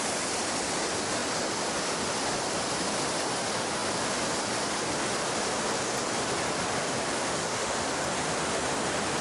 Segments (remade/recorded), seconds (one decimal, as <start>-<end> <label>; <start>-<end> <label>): 0.0-7.4 recorded; 7.4-7.9 remade; 7.9-9.2 recorded